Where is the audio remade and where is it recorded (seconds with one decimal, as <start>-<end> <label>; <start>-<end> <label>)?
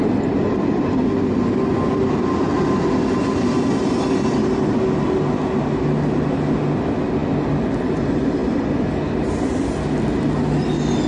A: 0.0-11.1 recorded